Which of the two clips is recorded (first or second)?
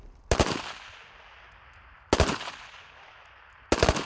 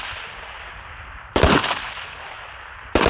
first